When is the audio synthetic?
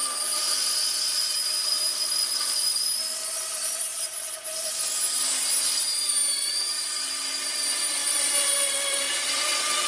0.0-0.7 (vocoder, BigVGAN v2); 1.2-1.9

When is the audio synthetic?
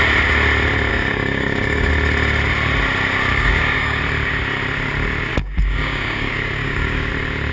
0.9-1.9 (codec, DAC); 3.3-4.0; 5.3-7.1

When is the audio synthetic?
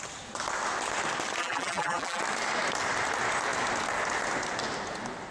1.4-2.2 (vocoder, BigVGAN v2)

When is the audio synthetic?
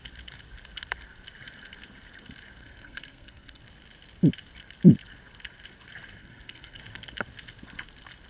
2.6-3.6 (codec, SNAC); 6.2-6.8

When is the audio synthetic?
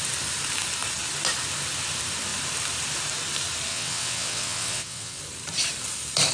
3.7-5.2 (vocoder, WaveNeXt)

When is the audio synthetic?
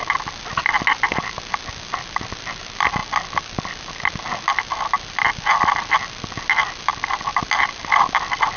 none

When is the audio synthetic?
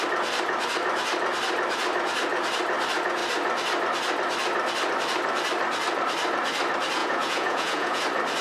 7.0-8.0 (vocoder, Vocos)